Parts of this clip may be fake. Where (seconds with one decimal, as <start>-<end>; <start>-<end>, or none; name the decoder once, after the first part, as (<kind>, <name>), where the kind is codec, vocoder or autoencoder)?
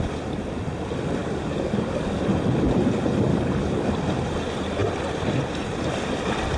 1.2-2.2 (codec, DAC); 3.3-3.9